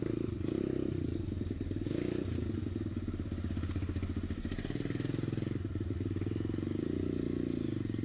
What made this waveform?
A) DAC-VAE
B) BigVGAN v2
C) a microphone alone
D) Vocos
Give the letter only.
C